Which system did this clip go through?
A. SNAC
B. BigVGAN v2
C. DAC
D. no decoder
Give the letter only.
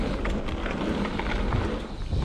D